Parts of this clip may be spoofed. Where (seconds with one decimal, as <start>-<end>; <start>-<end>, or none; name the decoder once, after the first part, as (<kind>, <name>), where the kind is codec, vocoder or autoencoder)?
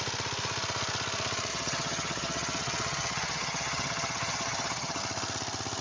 1.5-5.0 (vocoder, HiFi-GAN)